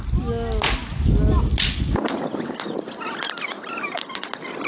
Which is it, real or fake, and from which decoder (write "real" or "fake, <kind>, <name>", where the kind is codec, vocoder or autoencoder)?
real